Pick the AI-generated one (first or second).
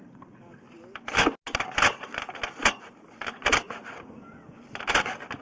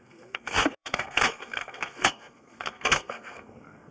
second